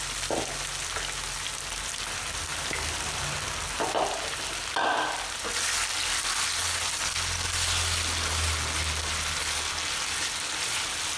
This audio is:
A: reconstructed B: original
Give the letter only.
B